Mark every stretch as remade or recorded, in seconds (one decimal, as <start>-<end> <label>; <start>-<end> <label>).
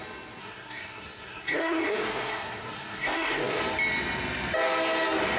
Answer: 0.0-0.4 recorded; 0.4-3.6 remade; 3.6-5.4 recorded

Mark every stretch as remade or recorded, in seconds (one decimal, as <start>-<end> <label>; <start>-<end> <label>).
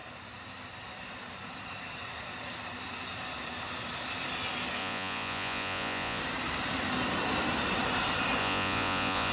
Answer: 0.0-4.8 recorded; 4.8-6.2 remade; 6.2-8.4 recorded; 8.4-9.3 remade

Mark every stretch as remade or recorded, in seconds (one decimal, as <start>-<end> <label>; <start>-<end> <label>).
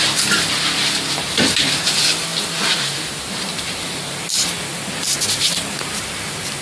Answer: 0.0-6.6 recorded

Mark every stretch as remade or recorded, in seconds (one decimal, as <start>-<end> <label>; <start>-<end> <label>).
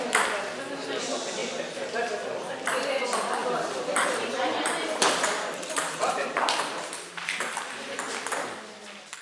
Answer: 0.0-3.4 recorded; 3.4-8.0 remade; 8.0-9.2 recorded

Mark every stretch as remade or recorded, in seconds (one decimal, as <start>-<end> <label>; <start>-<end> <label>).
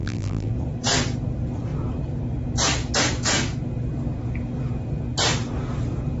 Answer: 0.0-0.5 remade; 0.5-6.2 recorded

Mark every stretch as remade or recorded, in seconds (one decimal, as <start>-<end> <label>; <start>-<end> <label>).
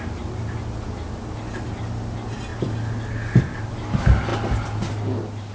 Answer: 0.0-5.5 recorded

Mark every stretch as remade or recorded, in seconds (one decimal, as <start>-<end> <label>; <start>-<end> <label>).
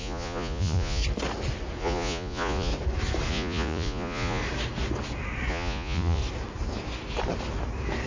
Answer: 0.0-1.0 remade; 1.0-1.8 recorded; 1.8-2.7 remade; 2.7-3.3 recorded; 3.3-4.4 remade; 4.4-5.5 recorded; 5.5-6.2 remade; 6.2-8.1 recorded